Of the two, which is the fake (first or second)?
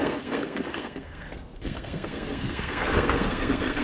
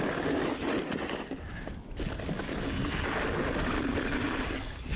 first